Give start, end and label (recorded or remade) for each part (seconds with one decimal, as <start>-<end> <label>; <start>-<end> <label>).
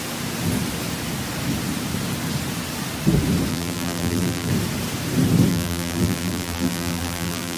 0.0-3.5 recorded; 3.5-4.5 remade; 4.5-5.5 recorded; 5.5-7.6 remade